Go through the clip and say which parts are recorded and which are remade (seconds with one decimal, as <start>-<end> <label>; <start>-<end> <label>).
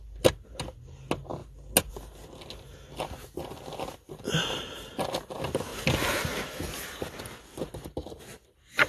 0.0-8.9 recorded